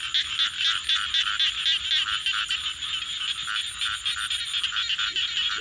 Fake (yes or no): no